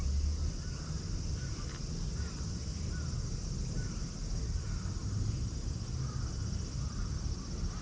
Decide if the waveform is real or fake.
real